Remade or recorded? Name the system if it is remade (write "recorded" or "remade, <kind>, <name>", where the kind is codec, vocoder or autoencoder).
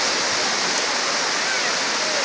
recorded